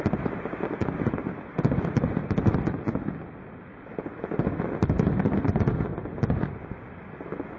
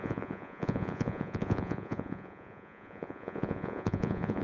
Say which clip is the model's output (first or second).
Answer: second